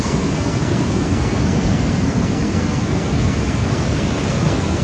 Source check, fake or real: fake